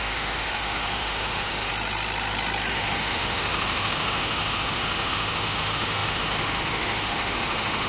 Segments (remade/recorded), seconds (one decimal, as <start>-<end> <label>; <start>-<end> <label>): 0.0-1.7 remade; 1.7-2.7 recorded; 2.7-7.9 remade